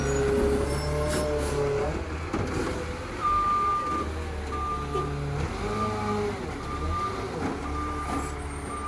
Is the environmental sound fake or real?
real